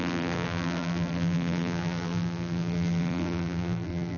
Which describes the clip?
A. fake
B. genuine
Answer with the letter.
A